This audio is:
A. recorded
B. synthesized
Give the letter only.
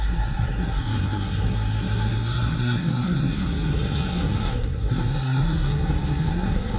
B